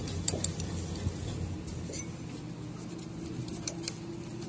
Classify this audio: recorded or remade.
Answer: recorded